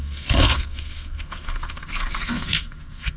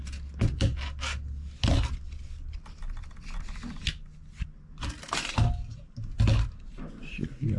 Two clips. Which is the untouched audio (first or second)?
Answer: second